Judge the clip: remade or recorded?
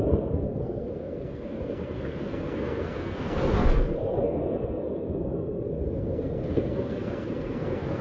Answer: remade